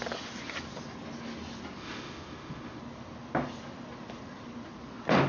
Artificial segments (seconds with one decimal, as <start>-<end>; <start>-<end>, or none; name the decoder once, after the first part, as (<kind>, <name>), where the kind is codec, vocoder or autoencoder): 1.8-2.8 (autoencoder, DAC-VAE)

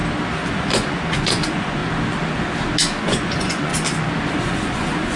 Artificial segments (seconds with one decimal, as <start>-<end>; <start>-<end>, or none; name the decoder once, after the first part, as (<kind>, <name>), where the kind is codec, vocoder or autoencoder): 0.5-1.8 (vocoder, Vocos); 3.0-3.7; 4.3-5.2

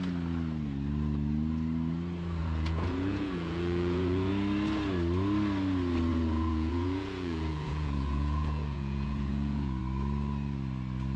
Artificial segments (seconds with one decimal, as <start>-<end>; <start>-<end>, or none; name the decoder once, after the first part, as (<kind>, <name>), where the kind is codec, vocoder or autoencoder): 2.4-4.3 (vocoder, Vocos); 6.1-9.8

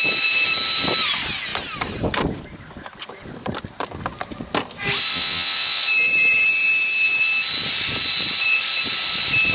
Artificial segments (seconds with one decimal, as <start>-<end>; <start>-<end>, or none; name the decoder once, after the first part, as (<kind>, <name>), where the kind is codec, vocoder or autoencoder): 5.1-5.8 (vocoder, WaveNeXt)